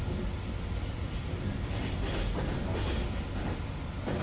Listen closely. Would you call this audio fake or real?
real